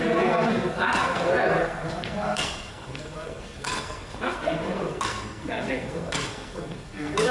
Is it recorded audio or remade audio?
remade